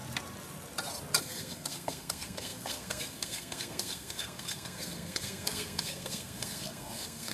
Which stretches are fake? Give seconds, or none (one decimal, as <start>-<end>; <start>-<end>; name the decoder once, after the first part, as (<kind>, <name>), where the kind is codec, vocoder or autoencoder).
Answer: 1.2-7.3 (codec, SNAC)